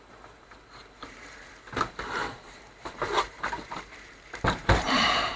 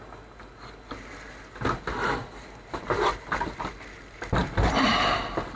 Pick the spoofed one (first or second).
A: first